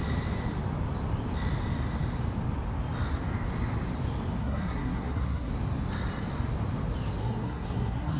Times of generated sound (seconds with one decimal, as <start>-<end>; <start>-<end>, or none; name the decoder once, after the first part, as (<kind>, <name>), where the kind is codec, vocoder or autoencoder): 4.4-5.5 (codec, SNAC); 7.2-8.2